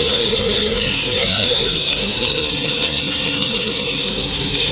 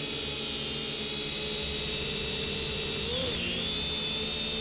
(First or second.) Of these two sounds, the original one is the second